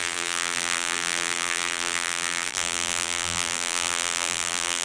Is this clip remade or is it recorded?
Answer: remade